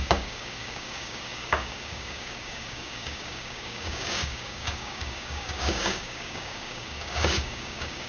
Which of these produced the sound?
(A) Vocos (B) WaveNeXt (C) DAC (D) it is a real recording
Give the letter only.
C